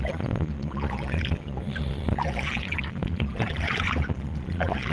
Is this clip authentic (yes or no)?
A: no